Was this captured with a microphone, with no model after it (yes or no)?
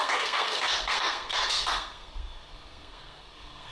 no